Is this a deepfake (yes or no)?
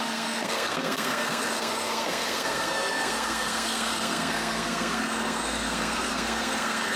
yes